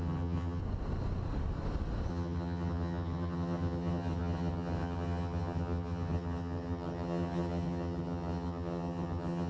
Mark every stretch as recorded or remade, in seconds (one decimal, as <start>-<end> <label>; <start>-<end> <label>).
0.0-0.6 remade; 0.6-2.1 recorded; 2.1-9.5 remade

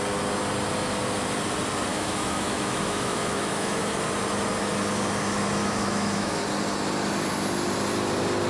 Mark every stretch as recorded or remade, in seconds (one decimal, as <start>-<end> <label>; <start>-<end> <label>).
0.0-1.9 recorded; 1.9-3.9 remade; 3.9-5.6 recorded; 5.6-6.4 remade; 6.4-8.5 recorded

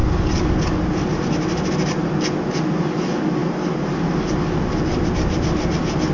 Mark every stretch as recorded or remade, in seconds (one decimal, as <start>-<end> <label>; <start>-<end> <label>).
0.0-6.1 recorded

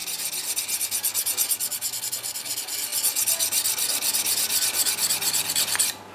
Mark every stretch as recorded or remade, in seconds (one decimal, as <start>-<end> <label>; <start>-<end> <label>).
0.0-6.1 recorded